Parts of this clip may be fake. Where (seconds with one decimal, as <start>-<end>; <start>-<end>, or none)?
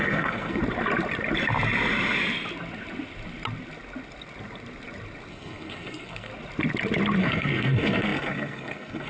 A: 0.0-0.6; 5.3-6.3; 7.2-9.1